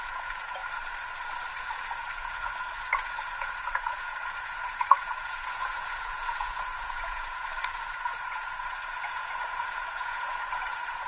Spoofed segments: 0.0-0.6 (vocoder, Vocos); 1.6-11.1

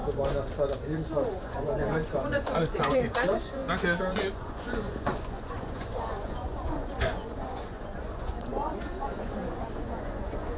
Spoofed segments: 1.3-10.6 (vocoder, Vocos)